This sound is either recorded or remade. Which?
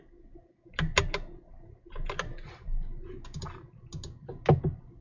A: recorded